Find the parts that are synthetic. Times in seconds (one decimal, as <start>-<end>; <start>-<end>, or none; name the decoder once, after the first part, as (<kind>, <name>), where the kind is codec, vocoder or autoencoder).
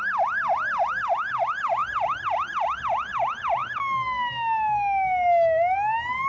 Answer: none